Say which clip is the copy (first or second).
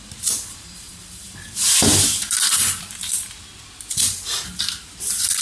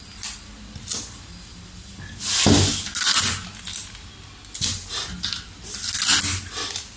first